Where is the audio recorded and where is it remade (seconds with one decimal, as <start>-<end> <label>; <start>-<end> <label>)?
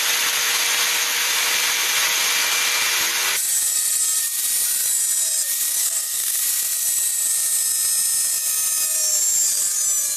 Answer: 0.0-5.8 recorded; 5.8-6.4 remade; 6.4-10.2 recorded